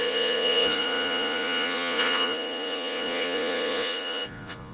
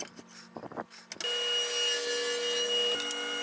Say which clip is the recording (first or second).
second